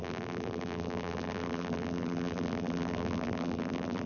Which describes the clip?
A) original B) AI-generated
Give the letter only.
B